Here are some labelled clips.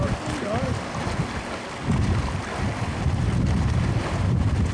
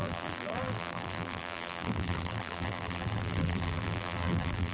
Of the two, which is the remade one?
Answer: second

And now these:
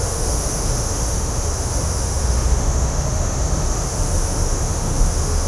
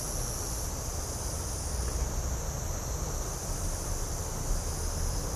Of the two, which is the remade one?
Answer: first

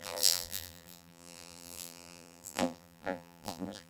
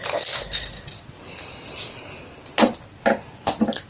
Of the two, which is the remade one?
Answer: first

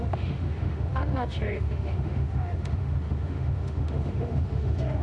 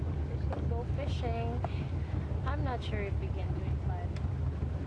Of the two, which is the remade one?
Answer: first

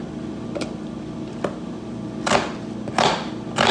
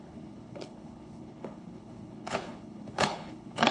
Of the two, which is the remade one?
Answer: second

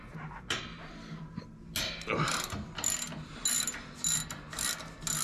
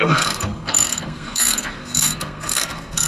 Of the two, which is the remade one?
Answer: second